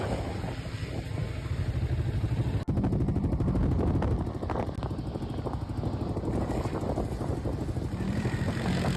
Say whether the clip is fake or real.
real